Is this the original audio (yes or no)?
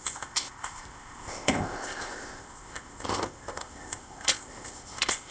no